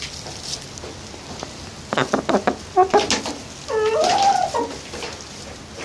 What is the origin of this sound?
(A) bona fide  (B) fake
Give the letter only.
A